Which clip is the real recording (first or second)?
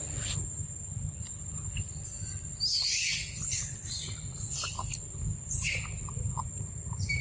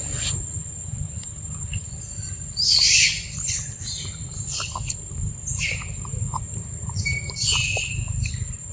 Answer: first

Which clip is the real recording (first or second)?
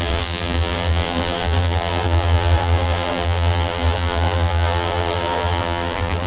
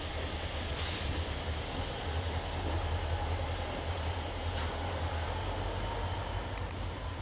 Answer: second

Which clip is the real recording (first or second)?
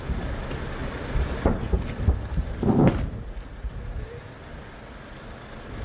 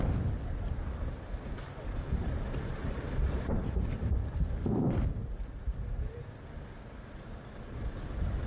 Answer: first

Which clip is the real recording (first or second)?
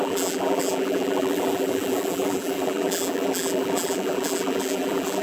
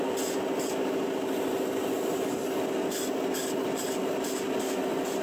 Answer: second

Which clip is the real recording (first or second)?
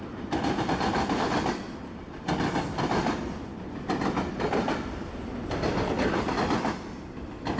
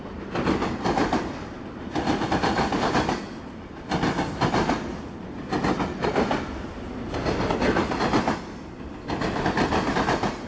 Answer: second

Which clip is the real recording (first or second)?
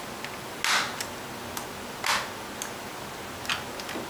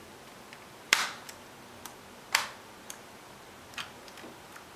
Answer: first